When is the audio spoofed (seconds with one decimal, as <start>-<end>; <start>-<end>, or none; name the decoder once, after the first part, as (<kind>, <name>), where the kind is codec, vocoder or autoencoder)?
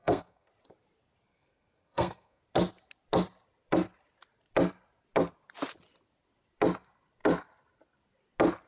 0.0-0.5 (codec, SNAC); 1.3-2.4